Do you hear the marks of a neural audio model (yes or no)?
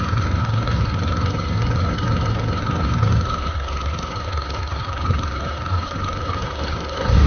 yes